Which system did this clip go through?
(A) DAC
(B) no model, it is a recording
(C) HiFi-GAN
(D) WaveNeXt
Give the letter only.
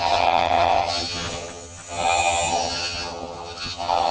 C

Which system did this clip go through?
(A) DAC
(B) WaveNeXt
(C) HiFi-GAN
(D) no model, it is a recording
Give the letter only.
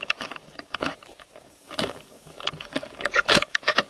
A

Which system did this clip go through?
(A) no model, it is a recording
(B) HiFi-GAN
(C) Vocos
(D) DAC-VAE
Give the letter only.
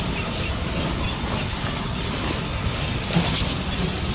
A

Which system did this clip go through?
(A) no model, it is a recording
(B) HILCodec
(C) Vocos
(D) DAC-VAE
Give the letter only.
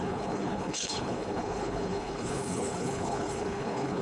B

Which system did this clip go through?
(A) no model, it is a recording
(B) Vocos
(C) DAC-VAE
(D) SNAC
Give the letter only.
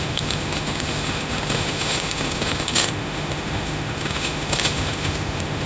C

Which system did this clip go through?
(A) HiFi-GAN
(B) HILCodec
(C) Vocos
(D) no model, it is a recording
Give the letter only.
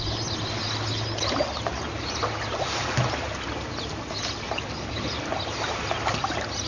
D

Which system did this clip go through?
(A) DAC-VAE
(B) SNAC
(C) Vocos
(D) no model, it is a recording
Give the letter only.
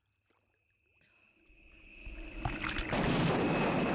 D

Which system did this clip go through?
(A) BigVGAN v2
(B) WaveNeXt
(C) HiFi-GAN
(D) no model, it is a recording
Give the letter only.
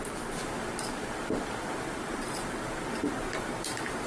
A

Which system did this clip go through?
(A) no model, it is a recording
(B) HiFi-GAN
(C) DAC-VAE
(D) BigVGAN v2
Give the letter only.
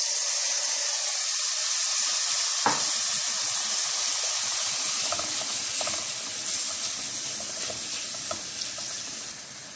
A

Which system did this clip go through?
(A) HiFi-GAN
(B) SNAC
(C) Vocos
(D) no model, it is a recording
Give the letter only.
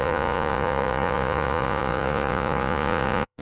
C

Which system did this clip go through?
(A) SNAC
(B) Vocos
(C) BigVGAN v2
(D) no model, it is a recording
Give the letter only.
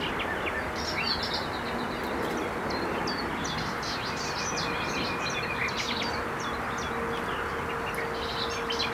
D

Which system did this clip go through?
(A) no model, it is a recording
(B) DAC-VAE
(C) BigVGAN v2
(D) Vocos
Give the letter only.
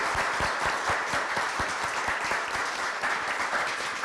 A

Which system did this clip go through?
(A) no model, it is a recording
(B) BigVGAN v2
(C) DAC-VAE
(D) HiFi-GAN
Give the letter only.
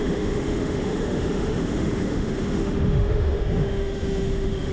C